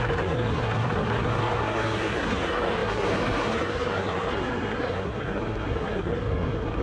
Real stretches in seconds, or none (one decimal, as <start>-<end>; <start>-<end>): none